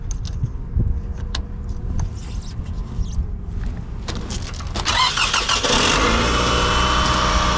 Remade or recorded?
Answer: recorded